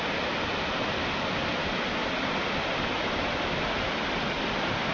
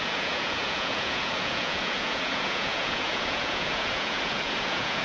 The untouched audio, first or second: first